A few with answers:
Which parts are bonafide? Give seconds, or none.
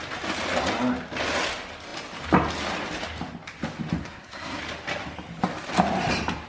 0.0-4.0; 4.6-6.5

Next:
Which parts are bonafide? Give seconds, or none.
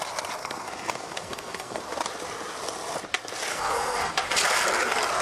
0.0-0.4; 1.8-3.5; 4.1-5.2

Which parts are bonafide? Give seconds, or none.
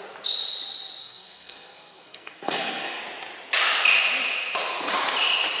0.0-1.0; 3.0-5.6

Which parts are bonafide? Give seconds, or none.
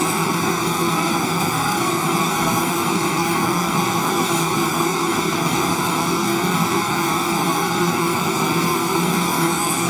none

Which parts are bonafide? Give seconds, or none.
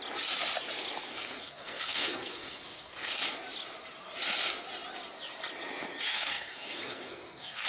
0.0-1.1; 3.2-6.1